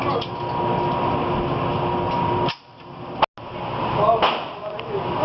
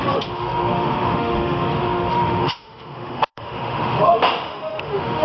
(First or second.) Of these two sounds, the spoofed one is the second